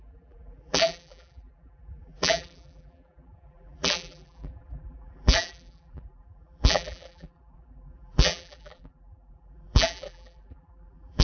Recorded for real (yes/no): no